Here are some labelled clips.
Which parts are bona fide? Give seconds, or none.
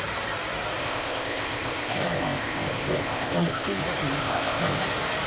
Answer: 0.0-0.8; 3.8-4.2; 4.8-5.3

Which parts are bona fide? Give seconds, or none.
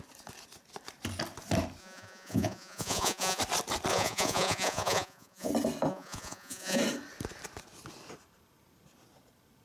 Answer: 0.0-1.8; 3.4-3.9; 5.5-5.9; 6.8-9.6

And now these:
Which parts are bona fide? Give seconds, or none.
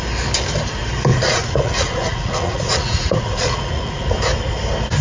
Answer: 0.0-1.1; 4.1-5.0